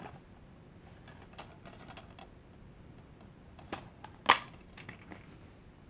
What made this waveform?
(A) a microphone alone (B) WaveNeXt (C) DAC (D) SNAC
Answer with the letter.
A